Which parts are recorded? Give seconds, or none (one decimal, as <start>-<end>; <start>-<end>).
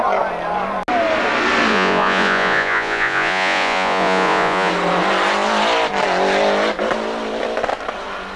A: 0.0-1.7; 4.7-8.4